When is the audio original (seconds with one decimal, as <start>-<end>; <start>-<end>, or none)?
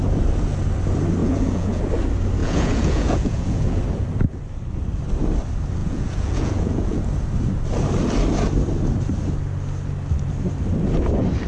0.0-1.2; 1.8-2.4; 3.8-5.8; 7.0-11.5